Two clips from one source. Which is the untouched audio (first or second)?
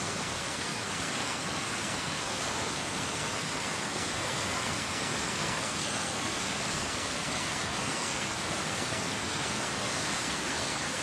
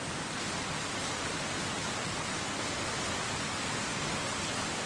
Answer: second